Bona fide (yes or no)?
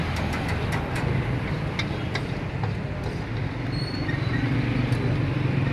yes